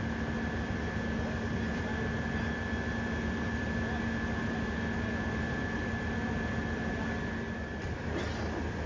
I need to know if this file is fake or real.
real